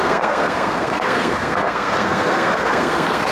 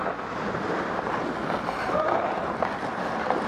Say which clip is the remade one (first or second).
first